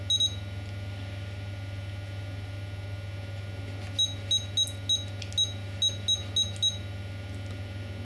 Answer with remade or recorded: recorded